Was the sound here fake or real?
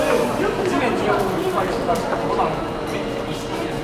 real